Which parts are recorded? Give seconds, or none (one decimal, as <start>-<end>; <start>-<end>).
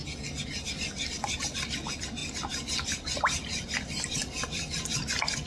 0.0-5.5